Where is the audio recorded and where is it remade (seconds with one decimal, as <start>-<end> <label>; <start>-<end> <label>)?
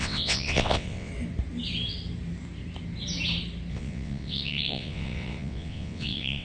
0.0-1.1 remade; 1.1-3.7 recorded; 3.7-6.4 remade